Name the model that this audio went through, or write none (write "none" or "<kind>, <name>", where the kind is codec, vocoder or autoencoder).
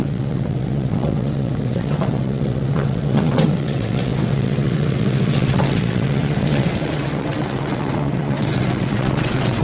vocoder, WaveNeXt